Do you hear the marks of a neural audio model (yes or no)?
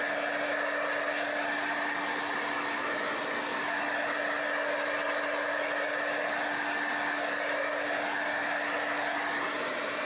no